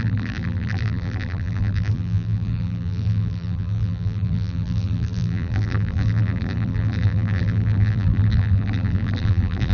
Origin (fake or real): fake